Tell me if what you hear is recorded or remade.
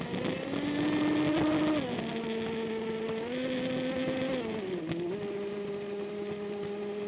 recorded